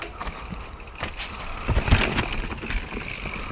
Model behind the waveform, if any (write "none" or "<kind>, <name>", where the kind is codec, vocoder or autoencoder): none